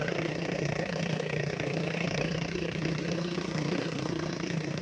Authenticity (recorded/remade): remade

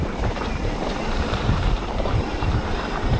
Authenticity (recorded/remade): remade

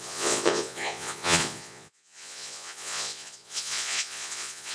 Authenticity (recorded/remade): remade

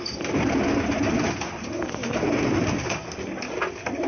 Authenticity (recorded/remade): recorded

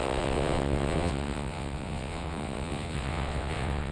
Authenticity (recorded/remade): remade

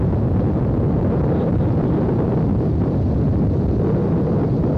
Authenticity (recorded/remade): remade